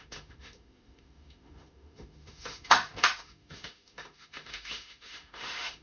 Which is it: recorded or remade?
remade